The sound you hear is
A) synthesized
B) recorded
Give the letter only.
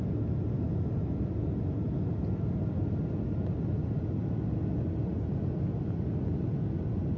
B